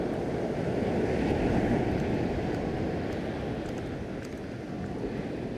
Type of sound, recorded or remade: recorded